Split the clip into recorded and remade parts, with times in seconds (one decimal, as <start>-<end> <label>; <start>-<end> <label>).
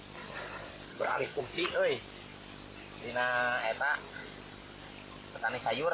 0.0-0.9 recorded; 0.9-1.4 remade; 1.4-5.9 recorded